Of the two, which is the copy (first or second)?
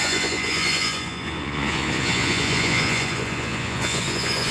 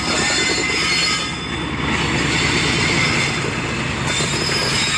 first